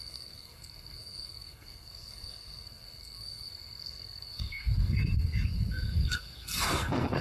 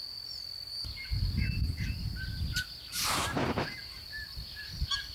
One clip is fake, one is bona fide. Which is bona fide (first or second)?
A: second